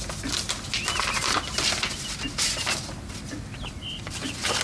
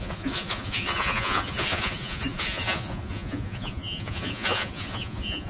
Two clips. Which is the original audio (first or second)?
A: first